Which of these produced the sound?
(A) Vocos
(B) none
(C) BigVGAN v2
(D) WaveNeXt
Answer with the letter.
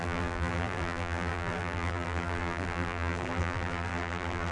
C